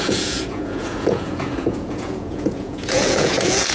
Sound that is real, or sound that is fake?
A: fake